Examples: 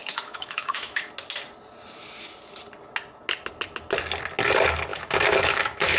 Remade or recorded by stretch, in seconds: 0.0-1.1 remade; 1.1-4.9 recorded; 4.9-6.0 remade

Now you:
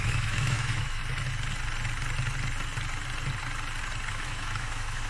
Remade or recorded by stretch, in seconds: 0.0-1.0 remade; 1.0-4.1 recorded; 4.1-5.1 remade

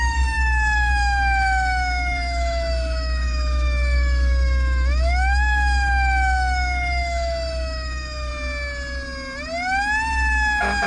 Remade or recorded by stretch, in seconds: 0.0-8.3 remade; 8.3-10.9 recorded